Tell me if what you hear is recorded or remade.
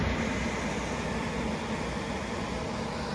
recorded